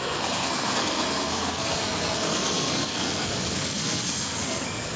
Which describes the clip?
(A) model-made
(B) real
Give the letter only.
A